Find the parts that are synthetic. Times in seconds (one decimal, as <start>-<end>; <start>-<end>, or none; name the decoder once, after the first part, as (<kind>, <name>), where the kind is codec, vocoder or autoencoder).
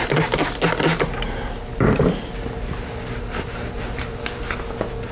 none